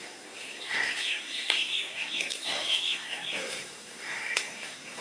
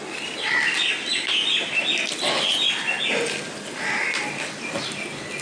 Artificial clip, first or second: first